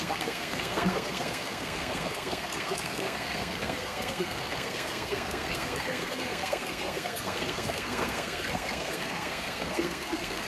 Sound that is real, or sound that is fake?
fake